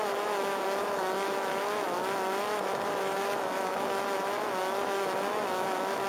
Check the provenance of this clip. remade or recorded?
remade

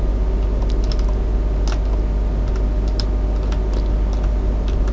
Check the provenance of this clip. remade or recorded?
recorded